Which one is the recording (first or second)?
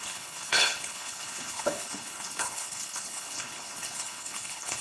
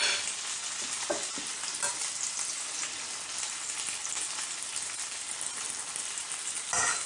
second